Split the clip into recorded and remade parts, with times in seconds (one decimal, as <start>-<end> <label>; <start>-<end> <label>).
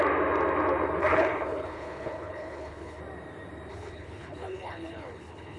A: 0.0-1.0 recorded; 1.0-3.0 remade; 3.0-3.7 recorded; 3.7-5.6 remade